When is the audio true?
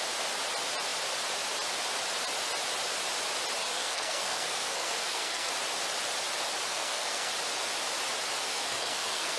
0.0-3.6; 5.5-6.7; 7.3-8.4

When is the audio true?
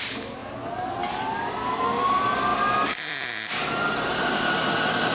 0.0-5.1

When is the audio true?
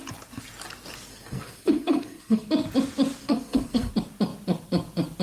0.0-1.1; 2.5-3.2; 3.9-5.2